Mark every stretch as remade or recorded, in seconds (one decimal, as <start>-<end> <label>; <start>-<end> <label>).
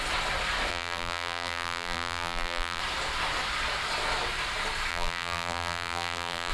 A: 0.0-0.7 recorded; 0.7-2.8 remade; 2.8-4.9 recorded; 4.9-6.5 remade